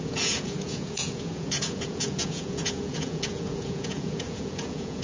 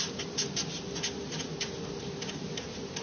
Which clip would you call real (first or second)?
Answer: second